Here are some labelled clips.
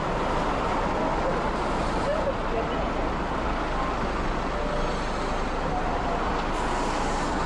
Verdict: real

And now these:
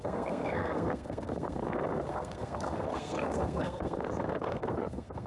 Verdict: fake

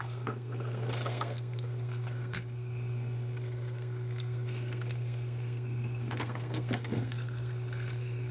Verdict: fake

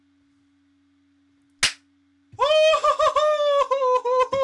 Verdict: real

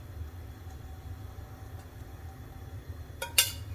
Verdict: real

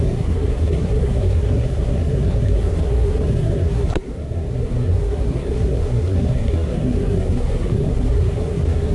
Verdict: fake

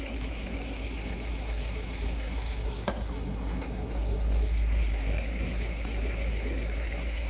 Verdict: fake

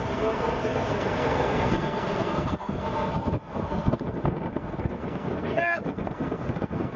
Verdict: fake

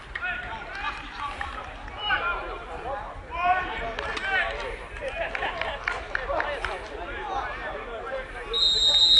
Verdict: real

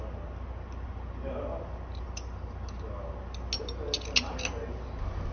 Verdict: real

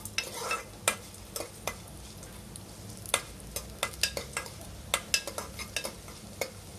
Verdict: real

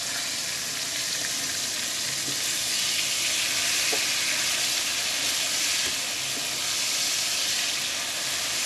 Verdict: real